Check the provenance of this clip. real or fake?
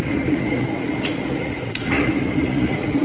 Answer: fake